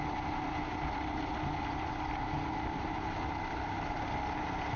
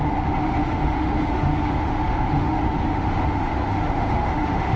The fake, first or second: second